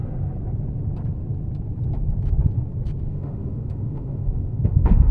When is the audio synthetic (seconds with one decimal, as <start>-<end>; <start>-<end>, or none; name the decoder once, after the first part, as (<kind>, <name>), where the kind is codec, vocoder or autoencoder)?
3.1-5.1 (autoencoder, DAC-VAE)